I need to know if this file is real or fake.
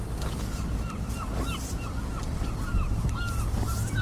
real